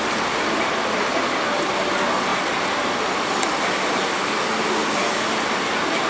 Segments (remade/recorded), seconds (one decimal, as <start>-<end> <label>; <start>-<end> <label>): 0.0-6.1 recorded